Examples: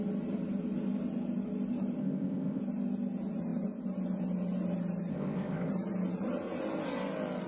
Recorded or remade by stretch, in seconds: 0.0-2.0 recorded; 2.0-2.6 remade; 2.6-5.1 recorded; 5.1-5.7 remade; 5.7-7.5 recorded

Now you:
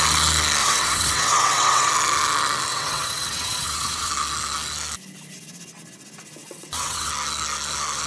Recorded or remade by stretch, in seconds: 0.0-0.6 recorded; 0.6-1.9 remade; 1.9-2.7 recorded; 2.7-4.1 remade; 4.1-6.4 recorded; 6.4-7.1 remade; 7.1-8.1 recorded

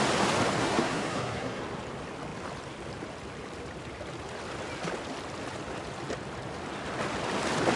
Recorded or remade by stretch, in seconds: 0.0-0.6 recorded; 0.6-1.6 remade; 1.6-7.8 recorded

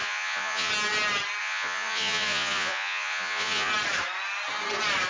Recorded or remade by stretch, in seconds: 0.0-0.7 remade; 0.7-1.4 recorded; 1.4-3.7 remade; 3.7-5.1 recorded

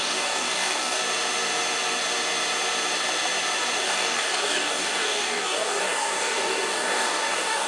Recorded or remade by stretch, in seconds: 0.0-1.0 remade; 1.0-3.8 recorded; 3.8-7.7 remade

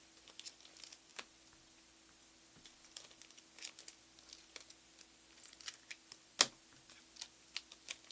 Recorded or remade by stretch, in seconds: 0.0-8.1 recorded

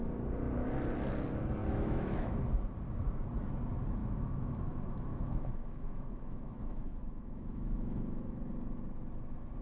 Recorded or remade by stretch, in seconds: 0.0-1.6 recorded; 1.6-2.4 remade; 2.4-4.0 recorded; 4.0-8.5 remade; 8.5-9.6 recorded